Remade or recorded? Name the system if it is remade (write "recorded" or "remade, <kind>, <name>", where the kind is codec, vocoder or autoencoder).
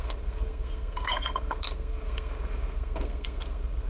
remade, codec, SNAC